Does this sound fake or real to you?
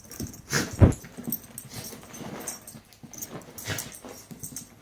real